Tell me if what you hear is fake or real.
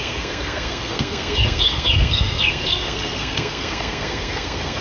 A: fake